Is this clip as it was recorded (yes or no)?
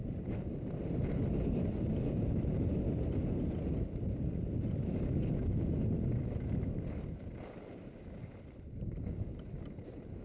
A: yes